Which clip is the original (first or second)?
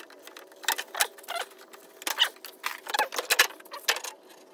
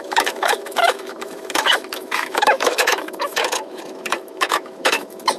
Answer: first